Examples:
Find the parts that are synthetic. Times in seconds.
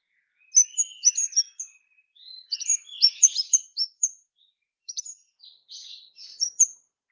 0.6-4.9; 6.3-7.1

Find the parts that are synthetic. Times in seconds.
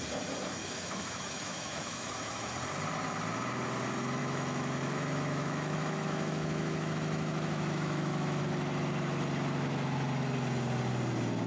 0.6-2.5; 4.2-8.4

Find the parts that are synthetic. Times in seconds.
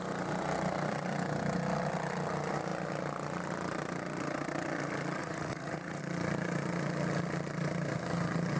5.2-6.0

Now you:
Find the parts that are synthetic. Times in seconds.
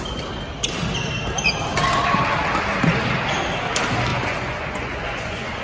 4.1-5.6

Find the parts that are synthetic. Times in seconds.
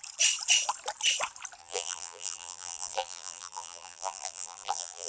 1.6-5.1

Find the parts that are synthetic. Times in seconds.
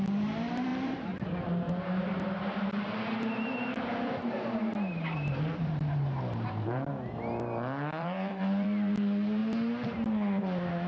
0.0-6.9; 8.0-9.4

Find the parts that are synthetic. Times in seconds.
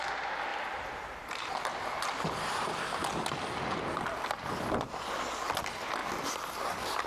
0.5-1.2; 6.0-6.6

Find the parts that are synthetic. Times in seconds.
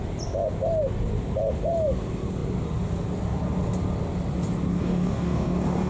4.7-5.9